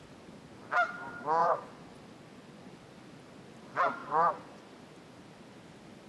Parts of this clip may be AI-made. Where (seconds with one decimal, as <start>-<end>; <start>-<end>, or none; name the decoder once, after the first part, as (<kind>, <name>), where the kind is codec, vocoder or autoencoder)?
1.4-2.7 (vocoder, Vocos); 4.0-4.7